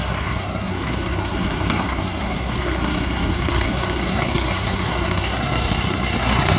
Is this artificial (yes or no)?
yes